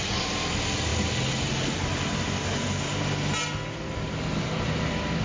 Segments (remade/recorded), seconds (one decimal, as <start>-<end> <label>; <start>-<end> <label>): 0.0-5.2 recorded